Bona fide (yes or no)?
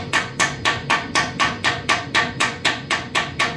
no